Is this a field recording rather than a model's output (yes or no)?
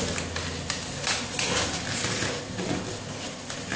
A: yes